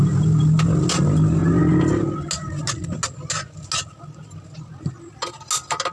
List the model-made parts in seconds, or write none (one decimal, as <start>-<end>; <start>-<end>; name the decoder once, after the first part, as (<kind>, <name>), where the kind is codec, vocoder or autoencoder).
none